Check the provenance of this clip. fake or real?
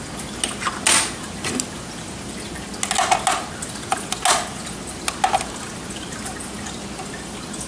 real